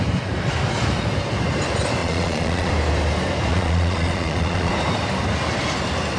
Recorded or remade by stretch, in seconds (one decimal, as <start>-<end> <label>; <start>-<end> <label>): 0.0-2.0 recorded; 2.0-2.7 remade; 2.7-3.5 recorded; 3.5-4.7 remade; 4.7-6.2 recorded